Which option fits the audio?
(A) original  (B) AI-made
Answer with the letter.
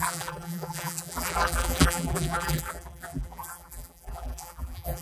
B